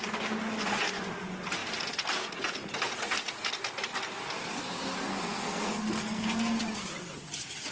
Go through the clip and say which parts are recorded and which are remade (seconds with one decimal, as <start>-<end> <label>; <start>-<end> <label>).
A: 0.0-5.1 recorded; 5.1-6.6 remade; 6.6-7.7 recorded